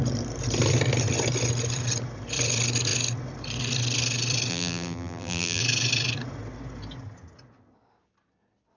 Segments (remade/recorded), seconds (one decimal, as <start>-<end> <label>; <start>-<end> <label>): 0.0-4.5 recorded; 4.5-5.6 remade; 5.6-8.8 recorded